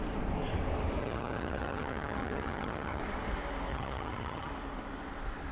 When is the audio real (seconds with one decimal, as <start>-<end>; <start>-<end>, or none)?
0.0-1.0; 3.0-3.7; 4.5-5.5